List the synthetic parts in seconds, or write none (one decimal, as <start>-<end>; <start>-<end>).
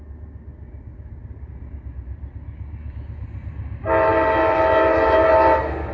none